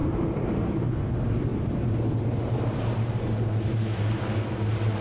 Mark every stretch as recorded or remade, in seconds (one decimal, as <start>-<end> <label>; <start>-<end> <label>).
0.0-1.1 remade; 1.1-1.5 recorded; 1.5-4.5 remade; 4.5-5.0 recorded